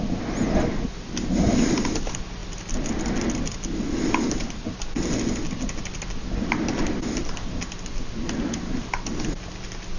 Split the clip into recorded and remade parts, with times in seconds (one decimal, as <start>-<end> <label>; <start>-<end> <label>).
0.0-10.0 recorded